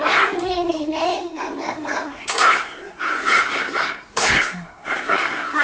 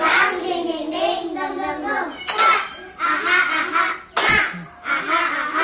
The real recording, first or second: second